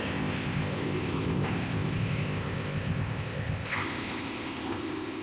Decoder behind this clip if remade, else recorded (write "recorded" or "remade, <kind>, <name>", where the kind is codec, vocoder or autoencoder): remade, codec, ZipCodec